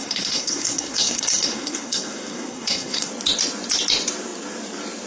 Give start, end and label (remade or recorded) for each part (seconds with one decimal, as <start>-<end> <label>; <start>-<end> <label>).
0.0-3.1 remade; 3.1-5.1 recorded